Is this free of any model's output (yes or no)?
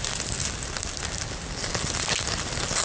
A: yes